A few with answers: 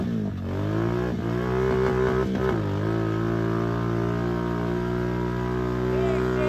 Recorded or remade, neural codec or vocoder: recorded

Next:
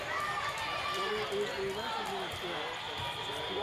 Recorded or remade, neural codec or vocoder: recorded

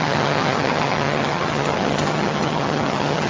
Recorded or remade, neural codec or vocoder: remade, vocoder, HiFi-GAN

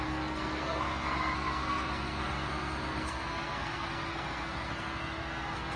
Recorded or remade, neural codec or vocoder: remade, codec, SNAC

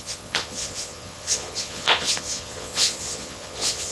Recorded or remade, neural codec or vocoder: remade, vocoder, Vocos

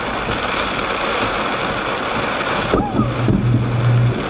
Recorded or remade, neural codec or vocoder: recorded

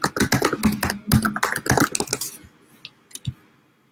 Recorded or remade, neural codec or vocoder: recorded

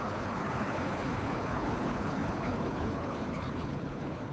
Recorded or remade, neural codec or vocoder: remade, codec, HILCodec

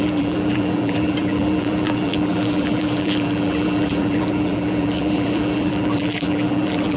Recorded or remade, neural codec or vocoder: remade, vocoder, BigVGAN v2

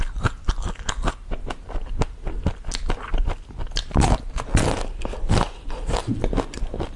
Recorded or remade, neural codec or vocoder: recorded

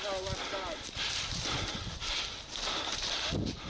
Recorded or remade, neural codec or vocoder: recorded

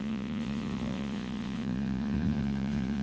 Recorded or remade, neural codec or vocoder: remade, vocoder, Vocos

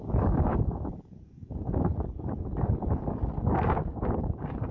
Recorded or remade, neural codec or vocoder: remade, codec, DAC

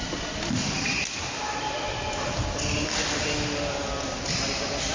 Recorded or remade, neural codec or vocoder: recorded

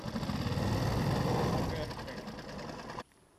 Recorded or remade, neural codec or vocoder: recorded